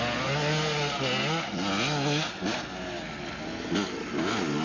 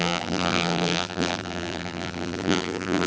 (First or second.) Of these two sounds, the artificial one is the second